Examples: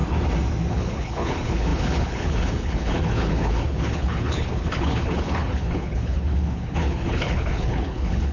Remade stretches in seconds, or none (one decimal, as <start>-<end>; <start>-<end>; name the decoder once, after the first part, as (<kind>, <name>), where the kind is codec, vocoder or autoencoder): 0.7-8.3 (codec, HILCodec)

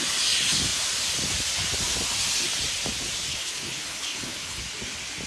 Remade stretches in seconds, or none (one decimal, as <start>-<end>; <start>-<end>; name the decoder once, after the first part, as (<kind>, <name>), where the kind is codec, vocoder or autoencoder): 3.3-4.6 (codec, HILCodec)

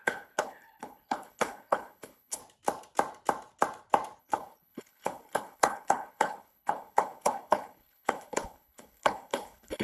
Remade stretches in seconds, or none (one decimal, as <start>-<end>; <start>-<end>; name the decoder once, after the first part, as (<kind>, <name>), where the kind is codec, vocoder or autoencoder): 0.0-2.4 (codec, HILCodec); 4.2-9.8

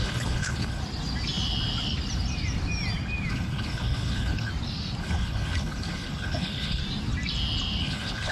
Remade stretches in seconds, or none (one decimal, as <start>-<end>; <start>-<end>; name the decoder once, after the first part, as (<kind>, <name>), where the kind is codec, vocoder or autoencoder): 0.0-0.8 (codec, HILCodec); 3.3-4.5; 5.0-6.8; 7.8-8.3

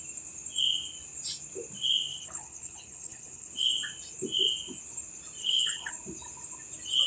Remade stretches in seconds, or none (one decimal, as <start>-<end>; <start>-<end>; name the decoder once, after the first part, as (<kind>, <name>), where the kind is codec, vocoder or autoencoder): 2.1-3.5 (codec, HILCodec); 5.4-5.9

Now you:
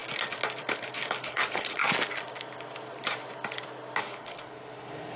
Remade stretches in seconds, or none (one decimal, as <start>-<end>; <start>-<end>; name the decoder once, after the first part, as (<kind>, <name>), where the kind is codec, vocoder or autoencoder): 1.2-1.8 (codec, HILCodec); 4.0-5.2

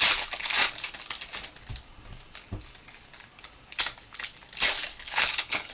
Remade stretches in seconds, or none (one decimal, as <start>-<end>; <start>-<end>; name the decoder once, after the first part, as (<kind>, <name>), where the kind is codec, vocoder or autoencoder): 4.9-5.7 (codec, HILCodec)

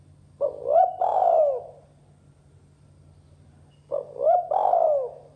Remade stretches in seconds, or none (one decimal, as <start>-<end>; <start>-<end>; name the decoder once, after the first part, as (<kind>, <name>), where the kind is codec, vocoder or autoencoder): none